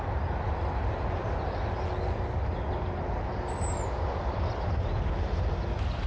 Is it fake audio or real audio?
real